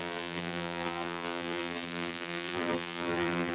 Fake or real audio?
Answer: fake